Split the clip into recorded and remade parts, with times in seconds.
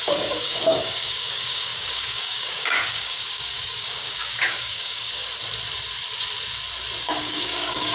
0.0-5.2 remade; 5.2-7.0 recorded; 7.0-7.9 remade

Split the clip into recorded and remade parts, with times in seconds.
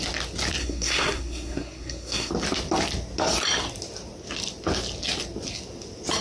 0.0-0.6 recorded; 0.6-2.3 remade; 2.3-6.2 recorded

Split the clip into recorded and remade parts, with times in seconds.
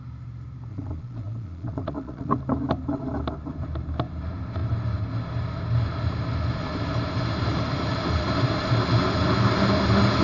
0.0-0.7 recorded; 0.7-2.3 remade; 2.3-10.2 recorded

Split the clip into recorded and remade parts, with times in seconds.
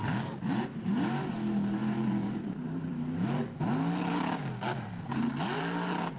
0.0-1.8 recorded; 1.8-2.9 remade; 2.9-4.7 recorded; 4.7-5.6 remade; 5.6-6.2 recorded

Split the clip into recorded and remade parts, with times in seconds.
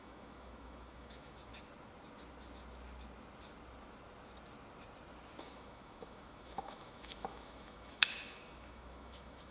0.0-1.5 remade; 1.5-5.4 recorded; 5.4-9.5 remade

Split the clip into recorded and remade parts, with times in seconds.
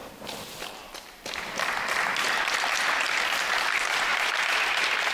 0.0-5.1 remade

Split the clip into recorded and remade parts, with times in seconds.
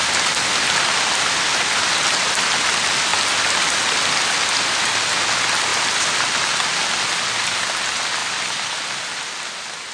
0.0-1.5 recorded; 1.5-2.5 remade; 2.5-3.1 recorded; 3.1-4.2 remade; 4.2-5.7 recorded; 5.7-6.7 remade; 6.7-8.2 recorded; 8.2-9.0 remade; 9.0-9.9 recorded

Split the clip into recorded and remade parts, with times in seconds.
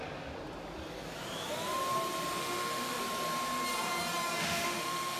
0.0-2.4 recorded; 2.4-3.0 remade; 3.0-4.4 recorded; 4.4-5.2 remade